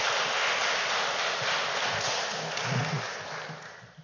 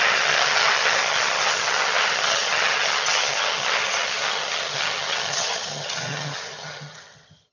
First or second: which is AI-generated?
second